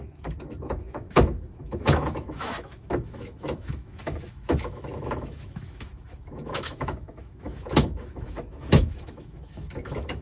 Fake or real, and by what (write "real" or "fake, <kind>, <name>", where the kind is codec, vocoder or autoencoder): fake, autoencoder, DAC-VAE